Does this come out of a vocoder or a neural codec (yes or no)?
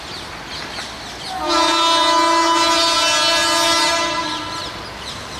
no